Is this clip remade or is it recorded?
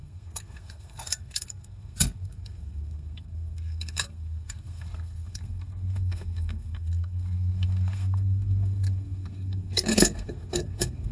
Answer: remade